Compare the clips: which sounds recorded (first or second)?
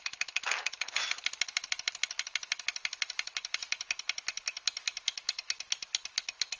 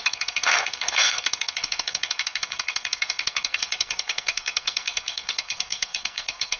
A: first